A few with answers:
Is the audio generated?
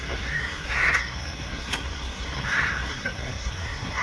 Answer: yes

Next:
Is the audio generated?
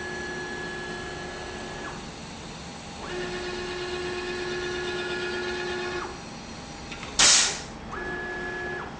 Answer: no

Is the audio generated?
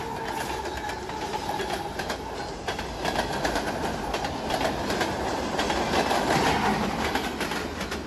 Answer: no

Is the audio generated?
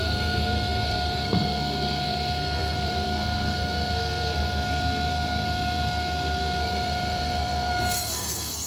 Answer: yes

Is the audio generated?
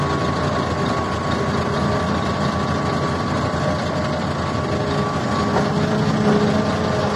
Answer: no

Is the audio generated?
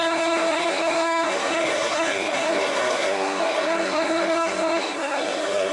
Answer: yes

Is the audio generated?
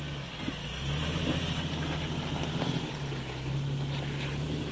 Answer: no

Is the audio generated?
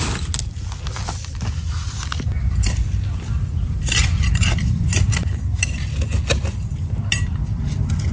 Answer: no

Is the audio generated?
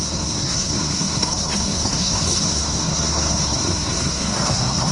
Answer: yes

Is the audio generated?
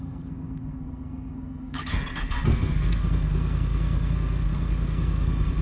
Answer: yes